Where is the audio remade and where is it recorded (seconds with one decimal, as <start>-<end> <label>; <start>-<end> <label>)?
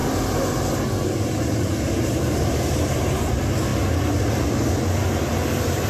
0.0-2.0 recorded; 2.0-3.7 remade; 3.7-5.9 recorded